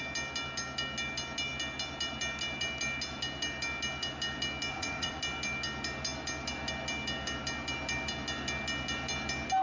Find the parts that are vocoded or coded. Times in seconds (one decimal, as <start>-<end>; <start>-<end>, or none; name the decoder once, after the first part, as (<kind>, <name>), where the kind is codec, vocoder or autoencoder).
4.7-5.2 (vocoder, Vocos)